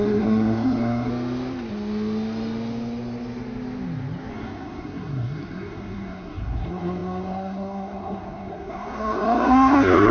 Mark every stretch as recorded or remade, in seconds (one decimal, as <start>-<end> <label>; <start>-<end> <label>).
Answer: 0.0-1.1 remade; 1.1-4.3 recorded; 4.3-10.1 remade

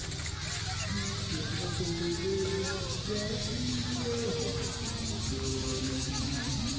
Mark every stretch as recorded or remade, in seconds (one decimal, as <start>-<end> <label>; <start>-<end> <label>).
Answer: 0.0-3.7 recorded; 3.7-4.3 remade; 4.3-5.5 recorded; 5.5-6.1 remade; 6.1-6.8 recorded

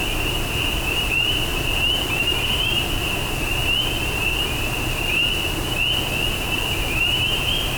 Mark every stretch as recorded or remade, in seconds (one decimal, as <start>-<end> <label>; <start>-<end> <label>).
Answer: 0.0-1.5 remade; 1.5-2.4 recorded; 2.4-3.0 remade; 3.0-6.7 recorded; 6.7-7.8 remade

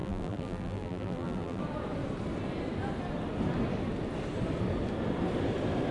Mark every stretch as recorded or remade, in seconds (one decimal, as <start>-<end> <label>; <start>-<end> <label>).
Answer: 0.0-1.6 remade; 1.6-5.9 recorded

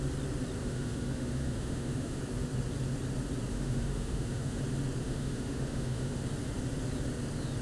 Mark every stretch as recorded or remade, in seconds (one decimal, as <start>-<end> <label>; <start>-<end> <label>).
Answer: 0.0-0.6 recorded; 0.6-2.2 remade; 2.2-3.5 recorded; 3.5-4.6 remade; 4.6-5.0 recorded; 5.0-6.2 remade; 6.2-7.6 recorded

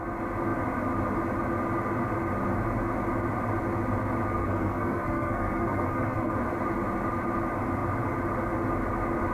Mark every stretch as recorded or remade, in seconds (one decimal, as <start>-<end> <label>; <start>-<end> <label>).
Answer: 0.0-4.4 recorded; 4.4-6.3 remade; 6.3-9.3 recorded

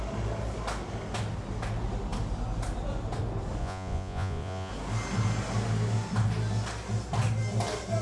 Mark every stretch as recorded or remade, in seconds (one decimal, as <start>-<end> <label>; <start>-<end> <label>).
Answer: 0.0-3.6 recorded; 3.6-4.7 remade; 4.7-8.0 recorded

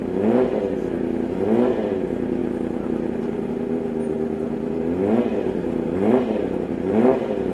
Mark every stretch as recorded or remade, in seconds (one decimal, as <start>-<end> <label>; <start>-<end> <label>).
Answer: 0.0-2.4 recorded; 2.4-3.5 remade; 3.5-5.3 recorded; 5.3-6.7 remade; 6.7-7.5 recorded